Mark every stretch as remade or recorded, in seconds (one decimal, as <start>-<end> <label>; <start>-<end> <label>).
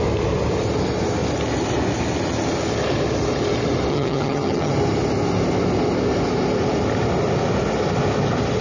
0.0-3.9 recorded; 3.9-4.7 remade; 4.7-8.6 recorded